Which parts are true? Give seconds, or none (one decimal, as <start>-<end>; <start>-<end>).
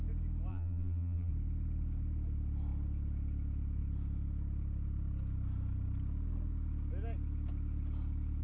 0.0-0.5; 1.3-8.4